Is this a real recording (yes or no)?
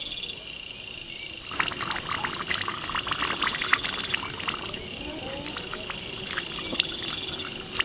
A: yes